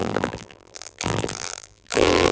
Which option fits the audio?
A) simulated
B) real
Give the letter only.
A